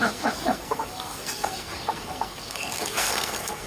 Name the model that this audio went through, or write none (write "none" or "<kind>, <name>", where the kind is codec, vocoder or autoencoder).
codec, SNAC